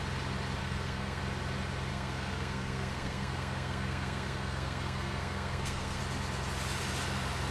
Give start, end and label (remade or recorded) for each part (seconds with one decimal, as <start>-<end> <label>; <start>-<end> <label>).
0.0-0.6 recorded; 0.6-1.2 remade; 1.2-1.9 recorded; 1.9-6.0 remade; 6.0-7.5 recorded